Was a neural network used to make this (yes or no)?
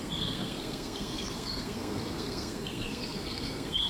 yes